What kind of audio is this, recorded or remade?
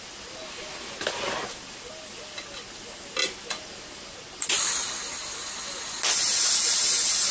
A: recorded